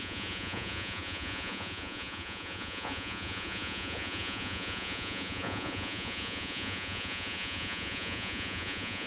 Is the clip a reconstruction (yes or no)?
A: yes